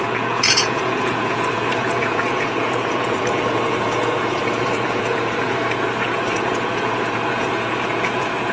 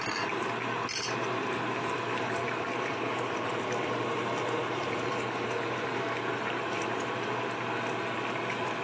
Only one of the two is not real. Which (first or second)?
first